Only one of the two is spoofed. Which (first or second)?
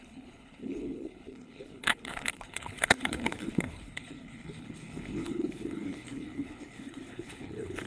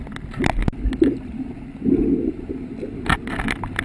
first